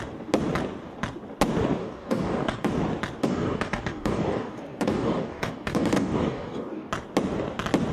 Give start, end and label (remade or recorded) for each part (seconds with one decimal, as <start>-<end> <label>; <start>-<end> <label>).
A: 0.0-1.8 recorded; 1.8-2.7 remade; 2.7-3.2 recorded; 3.2-6.9 remade; 6.9-7.9 recorded